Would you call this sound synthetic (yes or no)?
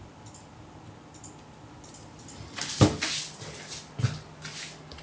no